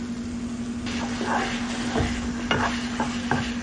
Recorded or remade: recorded